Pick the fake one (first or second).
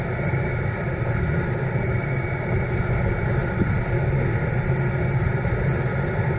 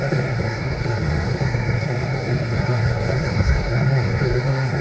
second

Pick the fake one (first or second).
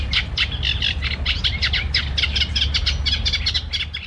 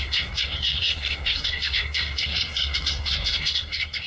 second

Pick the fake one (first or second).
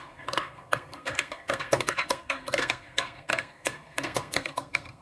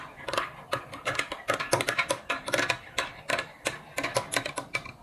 first